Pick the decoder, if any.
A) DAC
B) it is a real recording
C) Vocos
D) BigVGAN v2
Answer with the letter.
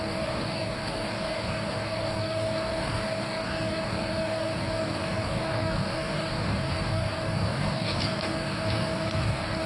A